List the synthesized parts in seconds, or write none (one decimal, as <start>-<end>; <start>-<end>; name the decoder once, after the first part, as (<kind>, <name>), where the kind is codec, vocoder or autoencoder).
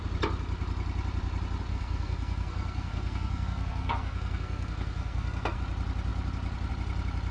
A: 1.7-5.6 (codec, SNAC)